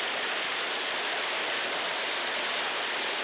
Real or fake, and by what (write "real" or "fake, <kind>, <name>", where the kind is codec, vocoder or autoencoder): real